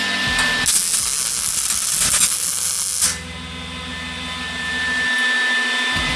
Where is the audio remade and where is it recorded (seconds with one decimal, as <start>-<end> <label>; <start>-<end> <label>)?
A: 0.0-6.2 recorded